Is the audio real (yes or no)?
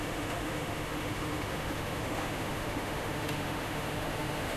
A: no